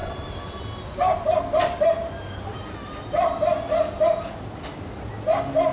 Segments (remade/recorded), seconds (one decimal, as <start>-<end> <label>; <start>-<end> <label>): 0.0-5.7 recorded